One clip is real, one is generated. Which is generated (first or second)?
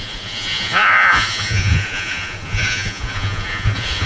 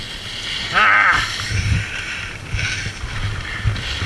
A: first